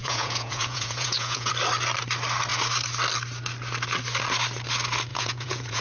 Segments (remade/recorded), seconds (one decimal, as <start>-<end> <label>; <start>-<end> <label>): 0.0-1.5 remade; 1.5-5.1 recorded; 5.1-5.8 remade